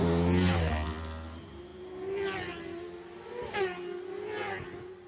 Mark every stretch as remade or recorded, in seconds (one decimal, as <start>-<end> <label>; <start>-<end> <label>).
0.0-5.1 recorded